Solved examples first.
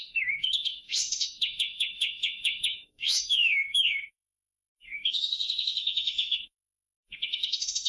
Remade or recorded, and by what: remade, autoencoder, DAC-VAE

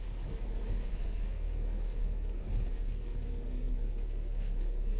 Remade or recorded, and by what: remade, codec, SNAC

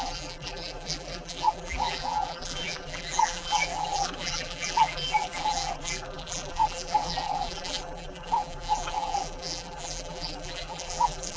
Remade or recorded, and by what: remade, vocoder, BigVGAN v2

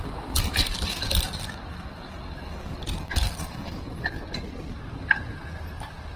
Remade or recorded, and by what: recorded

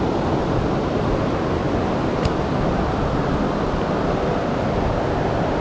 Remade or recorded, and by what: recorded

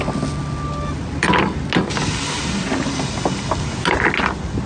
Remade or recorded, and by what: recorded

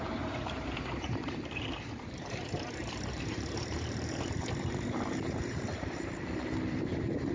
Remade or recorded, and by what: remade, vocoder, BigVGAN v2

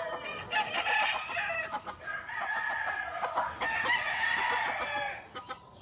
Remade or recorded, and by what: recorded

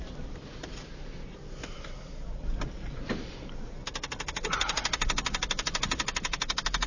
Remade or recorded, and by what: recorded